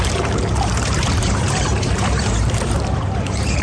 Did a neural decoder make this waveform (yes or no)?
yes